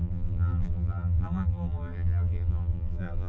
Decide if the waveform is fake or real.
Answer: fake